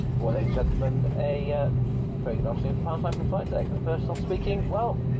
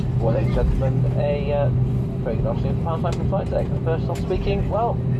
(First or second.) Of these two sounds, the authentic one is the second